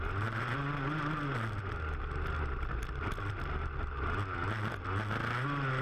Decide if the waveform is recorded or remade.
recorded